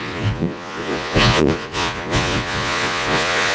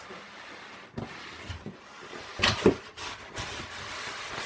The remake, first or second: first